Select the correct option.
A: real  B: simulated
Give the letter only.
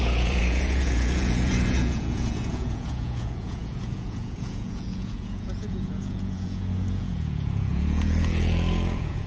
B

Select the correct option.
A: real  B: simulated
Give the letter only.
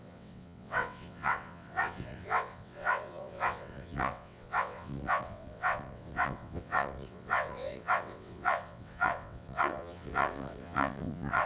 B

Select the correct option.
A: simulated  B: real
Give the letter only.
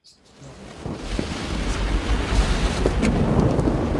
B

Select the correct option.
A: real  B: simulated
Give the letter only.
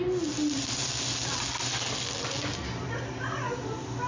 A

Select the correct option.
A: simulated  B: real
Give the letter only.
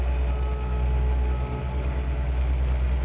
B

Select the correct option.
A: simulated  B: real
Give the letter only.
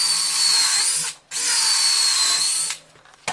B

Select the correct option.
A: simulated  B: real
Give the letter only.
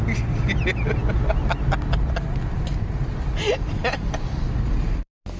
B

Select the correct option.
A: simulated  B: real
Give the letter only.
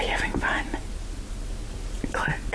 B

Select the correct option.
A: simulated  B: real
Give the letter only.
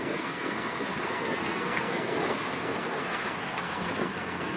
A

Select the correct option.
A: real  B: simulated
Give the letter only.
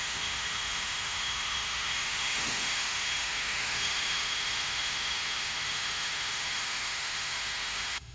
B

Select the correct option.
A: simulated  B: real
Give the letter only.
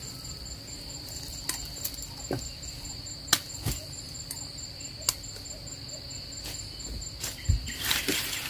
B